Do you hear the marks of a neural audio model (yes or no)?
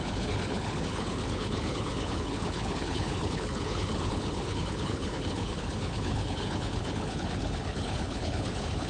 yes